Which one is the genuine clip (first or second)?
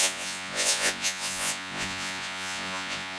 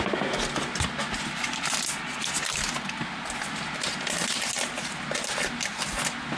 second